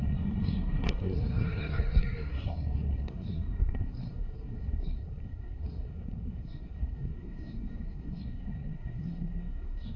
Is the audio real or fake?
fake